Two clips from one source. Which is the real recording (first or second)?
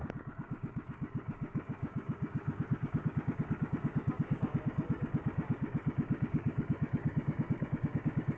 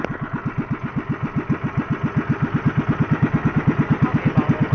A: second